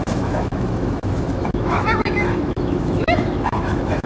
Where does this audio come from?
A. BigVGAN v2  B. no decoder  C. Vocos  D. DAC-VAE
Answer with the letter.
D